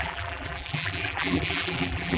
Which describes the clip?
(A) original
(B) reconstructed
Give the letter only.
B